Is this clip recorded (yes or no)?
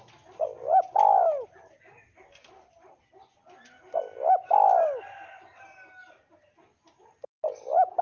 yes